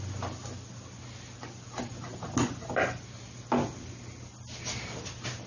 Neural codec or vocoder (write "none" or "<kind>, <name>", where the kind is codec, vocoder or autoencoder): none